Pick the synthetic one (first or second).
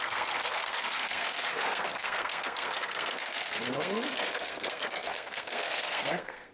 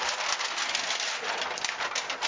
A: first